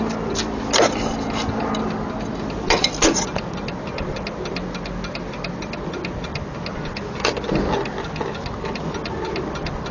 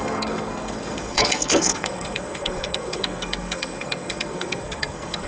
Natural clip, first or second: first